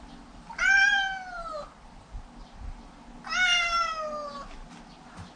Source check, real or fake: real